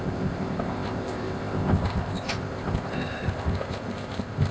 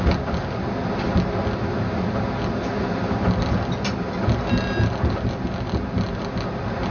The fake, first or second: first